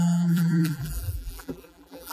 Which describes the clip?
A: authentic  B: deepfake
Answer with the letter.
B